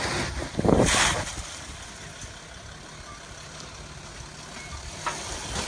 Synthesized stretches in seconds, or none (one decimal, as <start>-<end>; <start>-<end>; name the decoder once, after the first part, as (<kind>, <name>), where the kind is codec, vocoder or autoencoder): none